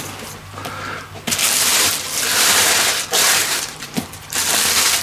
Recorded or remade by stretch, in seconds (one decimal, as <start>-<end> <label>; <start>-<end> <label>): 0.0-3.4 recorded; 3.4-4.1 remade; 4.1-5.0 recorded